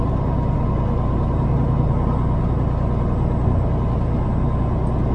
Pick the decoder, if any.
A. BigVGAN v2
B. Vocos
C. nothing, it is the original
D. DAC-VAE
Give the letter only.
C